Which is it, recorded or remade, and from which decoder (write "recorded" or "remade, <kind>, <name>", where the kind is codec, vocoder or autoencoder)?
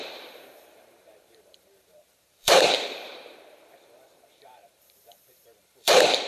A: remade, vocoder, BigVGAN v2